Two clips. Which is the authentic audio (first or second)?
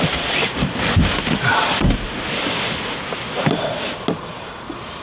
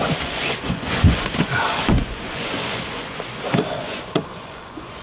first